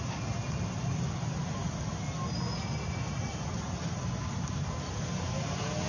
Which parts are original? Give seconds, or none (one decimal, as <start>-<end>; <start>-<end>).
0.0-5.9